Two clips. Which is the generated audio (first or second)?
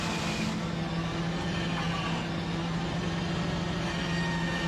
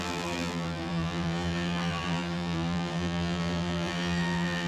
second